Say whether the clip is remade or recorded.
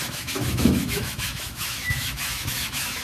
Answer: remade